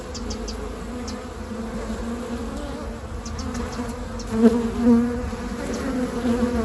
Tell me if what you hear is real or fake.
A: real